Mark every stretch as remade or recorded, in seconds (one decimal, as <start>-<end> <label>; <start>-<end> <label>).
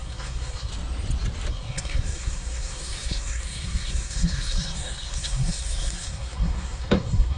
0.0-0.7 remade; 0.7-1.5 recorded; 1.5-7.4 remade